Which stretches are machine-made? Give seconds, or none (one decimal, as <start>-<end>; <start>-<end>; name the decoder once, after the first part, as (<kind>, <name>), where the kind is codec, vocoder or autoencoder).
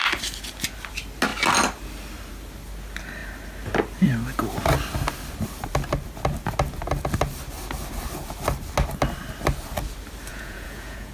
10.3-11.1 (vocoder, Vocos)